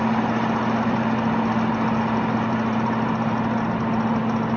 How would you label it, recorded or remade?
recorded